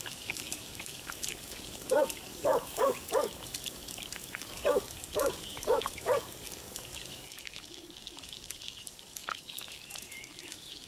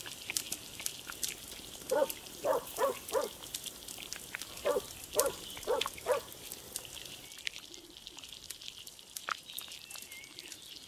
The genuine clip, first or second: second